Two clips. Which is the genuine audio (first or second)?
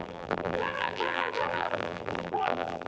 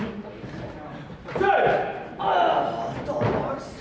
second